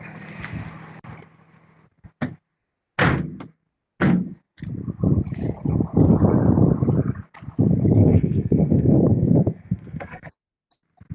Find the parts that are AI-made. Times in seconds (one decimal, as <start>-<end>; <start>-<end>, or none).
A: 8.0-10.3